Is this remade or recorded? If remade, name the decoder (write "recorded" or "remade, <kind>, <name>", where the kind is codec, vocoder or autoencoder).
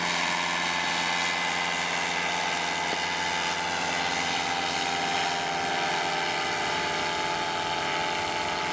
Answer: recorded